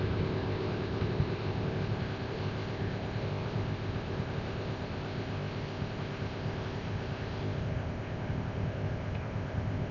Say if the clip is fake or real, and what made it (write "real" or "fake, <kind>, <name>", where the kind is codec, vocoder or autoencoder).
fake, codec, ZipCodec